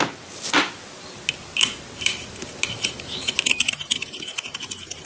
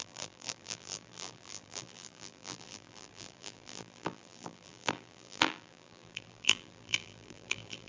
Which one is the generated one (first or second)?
second